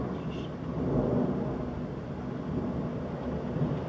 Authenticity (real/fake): real